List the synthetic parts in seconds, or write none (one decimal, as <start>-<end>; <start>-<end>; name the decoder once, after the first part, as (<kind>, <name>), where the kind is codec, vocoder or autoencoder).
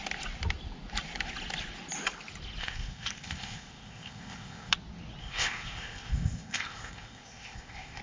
2.6-4.7 (codec, ZipCodec); 5.2-8.0